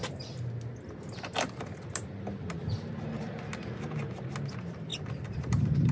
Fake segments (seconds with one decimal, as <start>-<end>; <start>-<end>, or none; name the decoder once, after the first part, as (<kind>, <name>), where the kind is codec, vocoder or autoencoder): none